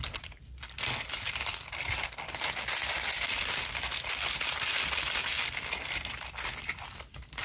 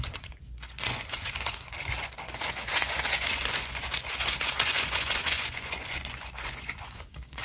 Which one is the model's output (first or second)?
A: second